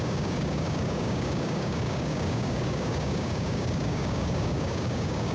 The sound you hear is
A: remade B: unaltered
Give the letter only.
A